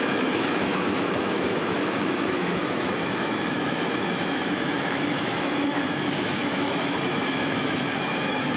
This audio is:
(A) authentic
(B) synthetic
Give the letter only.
B